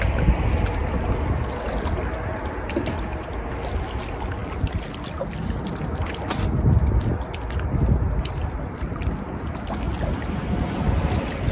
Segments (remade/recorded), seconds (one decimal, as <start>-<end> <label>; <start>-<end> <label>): 0.0-11.5 recorded